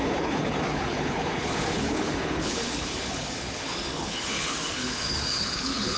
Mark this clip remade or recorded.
remade